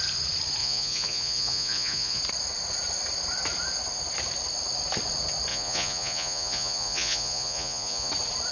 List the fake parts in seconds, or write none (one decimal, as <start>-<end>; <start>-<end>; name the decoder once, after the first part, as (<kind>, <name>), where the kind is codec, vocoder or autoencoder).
0.6-2.2 (vocoder, Vocos); 5.5-8.1